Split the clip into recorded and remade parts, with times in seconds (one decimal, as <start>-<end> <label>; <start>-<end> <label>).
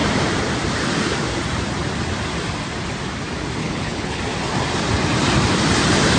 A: 0.0-3.6 recorded; 3.6-4.2 remade; 4.2-6.2 recorded